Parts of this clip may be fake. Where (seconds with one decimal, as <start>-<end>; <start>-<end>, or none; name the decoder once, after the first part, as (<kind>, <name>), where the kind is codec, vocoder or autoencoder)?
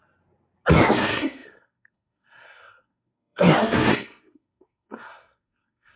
0.7-6.0 (codec, SNAC)